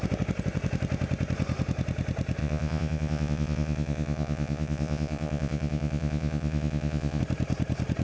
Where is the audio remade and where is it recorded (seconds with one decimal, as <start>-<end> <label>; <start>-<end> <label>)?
0.0-2.4 recorded; 2.4-7.2 remade; 7.2-8.0 recorded